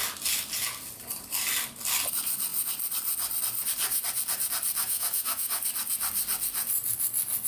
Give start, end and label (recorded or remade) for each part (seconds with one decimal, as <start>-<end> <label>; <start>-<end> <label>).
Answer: 0.0-4.8 recorded; 4.8-5.6 remade; 5.6-7.5 recorded